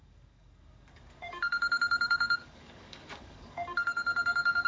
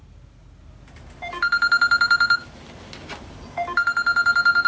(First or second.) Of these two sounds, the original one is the second